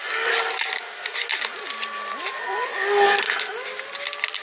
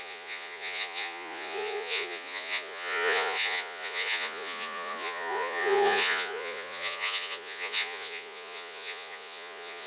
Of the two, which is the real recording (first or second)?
first